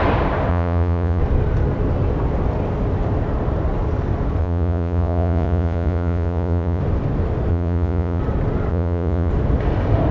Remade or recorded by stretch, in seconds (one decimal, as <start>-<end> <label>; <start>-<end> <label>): 0.0-0.5 recorded; 0.5-1.2 remade; 1.2-4.4 recorded; 4.4-6.8 remade; 6.8-7.5 recorded; 7.5-8.2 remade; 8.2-8.7 recorded; 8.7-9.3 remade; 9.3-10.1 recorded